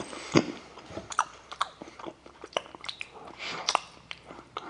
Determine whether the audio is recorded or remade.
remade